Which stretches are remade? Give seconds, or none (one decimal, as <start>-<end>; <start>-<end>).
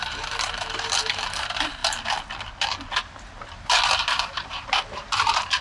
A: 0.0-1.8; 3.0-5.6